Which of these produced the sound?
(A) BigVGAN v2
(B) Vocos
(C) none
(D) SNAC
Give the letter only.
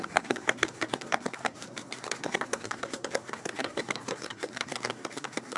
D